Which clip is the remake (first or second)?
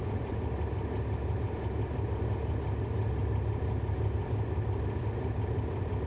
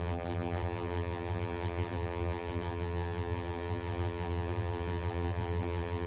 second